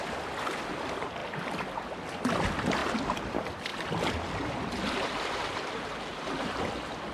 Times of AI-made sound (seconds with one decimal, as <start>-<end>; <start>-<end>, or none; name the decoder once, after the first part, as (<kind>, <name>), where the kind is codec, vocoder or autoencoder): none